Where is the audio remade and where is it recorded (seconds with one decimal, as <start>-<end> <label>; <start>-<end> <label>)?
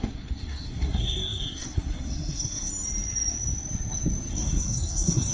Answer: 0.0-2.7 remade; 2.7-4.3 recorded; 4.3-5.3 remade